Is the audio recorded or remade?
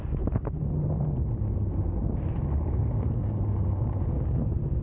recorded